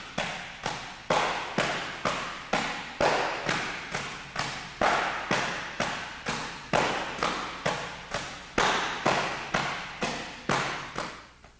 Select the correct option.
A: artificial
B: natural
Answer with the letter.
B